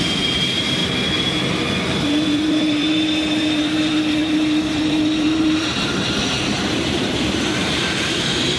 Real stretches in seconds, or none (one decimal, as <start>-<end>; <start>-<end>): 0.8-1.6